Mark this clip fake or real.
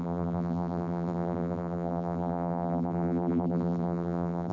fake